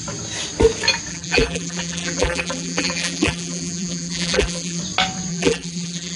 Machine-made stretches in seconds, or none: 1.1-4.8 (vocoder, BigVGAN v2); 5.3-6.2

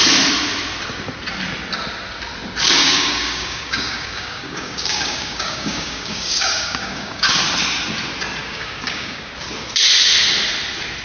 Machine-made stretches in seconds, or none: 2.8-7.3 (codec, DAC); 8.4-9.3

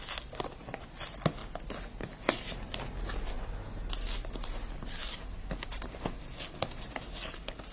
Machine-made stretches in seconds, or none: none

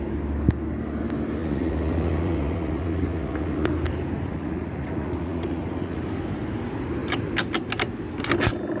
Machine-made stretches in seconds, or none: 1.4-3.7 (vocoder, Vocos); 4.3-6.0